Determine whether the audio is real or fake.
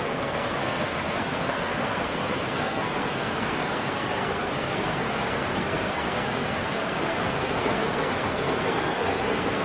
fake